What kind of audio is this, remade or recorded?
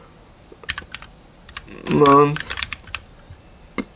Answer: recorded